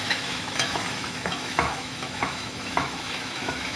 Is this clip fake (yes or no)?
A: yes